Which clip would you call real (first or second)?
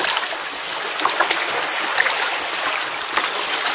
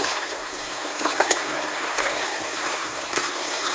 first